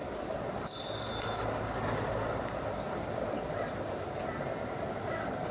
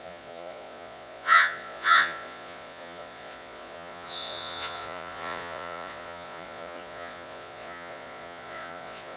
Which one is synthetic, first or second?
second